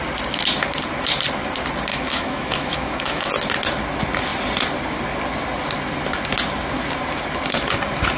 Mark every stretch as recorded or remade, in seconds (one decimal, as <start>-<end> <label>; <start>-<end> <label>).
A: 0.0-1.9 recorded; 1.9-3.3 remade; 3.3-8.2 recorded